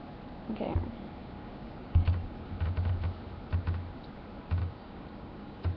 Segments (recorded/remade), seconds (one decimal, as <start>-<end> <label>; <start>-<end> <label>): 0.0-1.2 recorded; 1.2-2.5 remade; 2.5-4.6 recorded; 4.6-5.8 remade